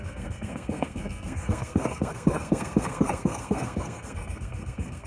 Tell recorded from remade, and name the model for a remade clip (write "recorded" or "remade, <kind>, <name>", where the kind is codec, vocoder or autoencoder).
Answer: remade, codec, SNAC